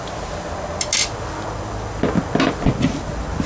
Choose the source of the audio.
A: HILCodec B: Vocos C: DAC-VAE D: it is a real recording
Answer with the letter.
D